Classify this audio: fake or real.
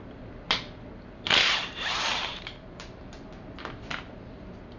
real